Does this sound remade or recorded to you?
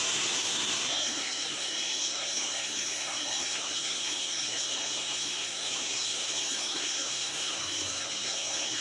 remade